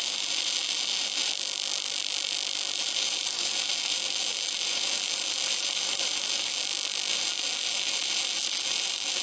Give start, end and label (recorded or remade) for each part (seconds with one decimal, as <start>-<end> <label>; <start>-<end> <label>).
0.0-1.3 remade; 1.3-2.8 recorded; 2.8-6.6 remade; 6.6-7.1 recorded; 7.1-9.2 remade